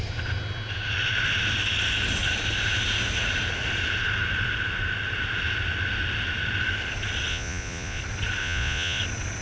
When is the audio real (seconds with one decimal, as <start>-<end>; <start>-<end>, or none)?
0.0-7.3; 8.0-8.4; 9.0-9.4